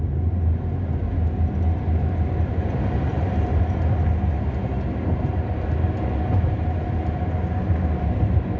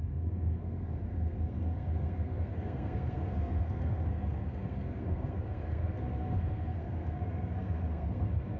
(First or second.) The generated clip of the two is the second